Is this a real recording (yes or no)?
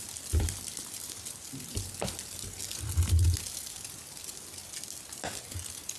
yes